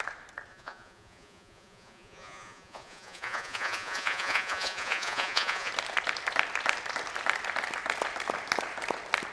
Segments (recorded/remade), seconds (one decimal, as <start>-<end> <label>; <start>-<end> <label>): 0.0-0.5 recorded; 0.5-5.7 remade; 5.7-9.3 recorded